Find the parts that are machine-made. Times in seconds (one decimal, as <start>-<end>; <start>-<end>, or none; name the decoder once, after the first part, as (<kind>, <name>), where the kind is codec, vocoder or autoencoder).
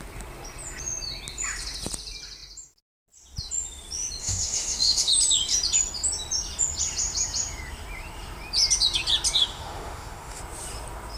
4.2-5.1 (autoencoder, DAC-VAE); 9.4-10.4